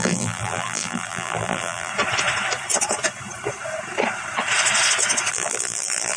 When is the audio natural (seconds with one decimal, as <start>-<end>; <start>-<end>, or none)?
1.9-5.3